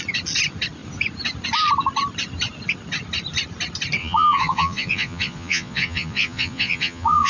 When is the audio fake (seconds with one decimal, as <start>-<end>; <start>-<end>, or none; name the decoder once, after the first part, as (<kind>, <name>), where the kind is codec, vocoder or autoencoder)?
4.0-7.3 (vocoder, Vocos)